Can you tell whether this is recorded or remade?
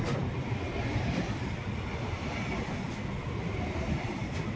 recorded